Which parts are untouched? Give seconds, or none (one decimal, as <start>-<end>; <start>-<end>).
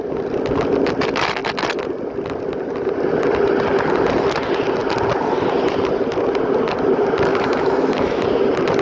0.0-7.3; 8.2-8.8